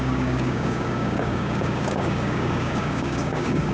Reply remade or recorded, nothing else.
remade